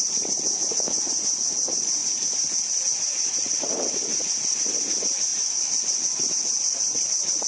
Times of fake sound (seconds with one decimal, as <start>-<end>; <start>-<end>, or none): 2.0-4.7; 5.3-6.3

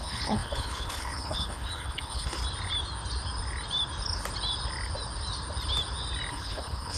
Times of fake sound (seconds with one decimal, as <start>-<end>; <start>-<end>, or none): 0.0-2.4; 6.3-7.0